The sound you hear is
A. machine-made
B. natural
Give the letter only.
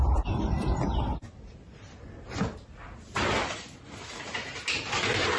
B